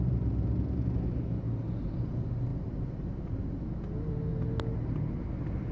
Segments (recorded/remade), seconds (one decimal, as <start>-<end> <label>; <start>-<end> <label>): 0.0-2.5 recorded; 2.5-3.6 remade; 3.6-5.7 recorded